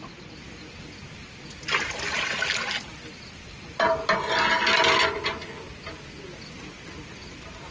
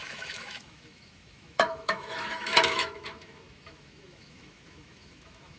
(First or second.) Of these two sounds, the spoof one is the second